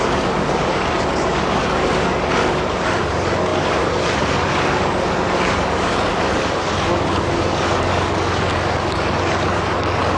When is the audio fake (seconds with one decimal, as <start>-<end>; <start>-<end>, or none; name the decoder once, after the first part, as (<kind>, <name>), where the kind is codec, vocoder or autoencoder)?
0.0-10.2 (codec, DAC)